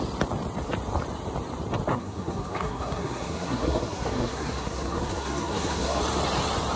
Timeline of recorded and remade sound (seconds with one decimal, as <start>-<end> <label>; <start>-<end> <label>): 0.0-1.9 recorded; 1.9-6.0 remade; 6.0-6.8 recorded